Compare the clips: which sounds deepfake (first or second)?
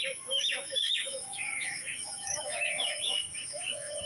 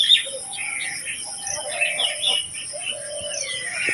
first